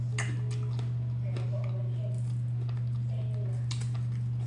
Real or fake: real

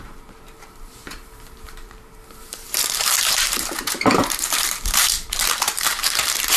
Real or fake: fake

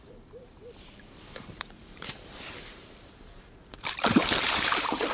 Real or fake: fake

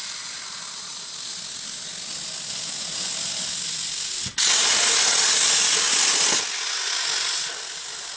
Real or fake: real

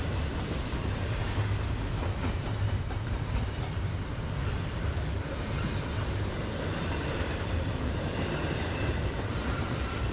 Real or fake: fake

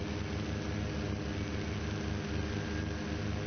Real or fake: real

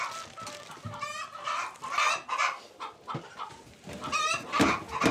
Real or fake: real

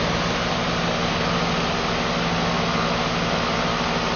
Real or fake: real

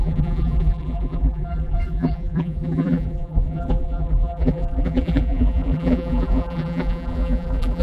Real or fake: fake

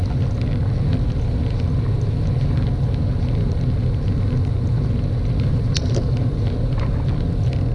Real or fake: real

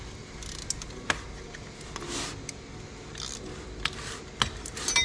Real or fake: real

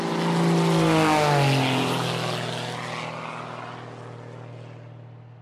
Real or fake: real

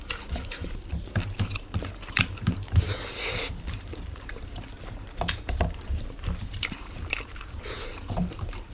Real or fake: fake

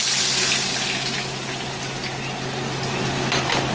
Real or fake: real